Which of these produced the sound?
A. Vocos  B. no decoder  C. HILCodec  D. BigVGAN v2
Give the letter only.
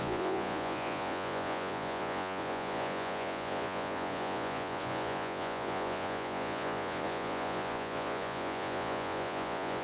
A